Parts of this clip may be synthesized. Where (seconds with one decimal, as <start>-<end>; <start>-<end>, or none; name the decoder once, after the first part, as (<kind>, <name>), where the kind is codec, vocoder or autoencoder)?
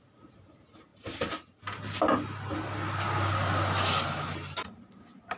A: none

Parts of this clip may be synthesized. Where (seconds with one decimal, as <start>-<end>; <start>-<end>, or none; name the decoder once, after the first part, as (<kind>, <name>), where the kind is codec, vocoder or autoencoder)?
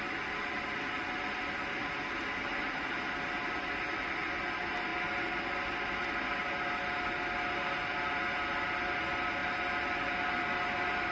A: none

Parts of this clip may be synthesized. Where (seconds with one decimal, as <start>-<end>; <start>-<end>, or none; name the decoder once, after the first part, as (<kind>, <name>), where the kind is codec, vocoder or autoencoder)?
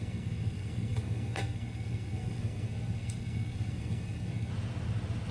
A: 0.0-4.5 (codec, SNAC)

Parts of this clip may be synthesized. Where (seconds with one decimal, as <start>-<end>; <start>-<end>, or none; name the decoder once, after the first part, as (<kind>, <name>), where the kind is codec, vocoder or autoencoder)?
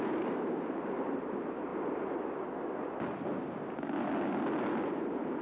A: 0.0-1.7 (vocoder, BigVGAN v2); 4.9-5.4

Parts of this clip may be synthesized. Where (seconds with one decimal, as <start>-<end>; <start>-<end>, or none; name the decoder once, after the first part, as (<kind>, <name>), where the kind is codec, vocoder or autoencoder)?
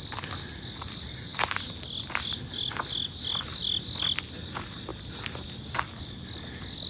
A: none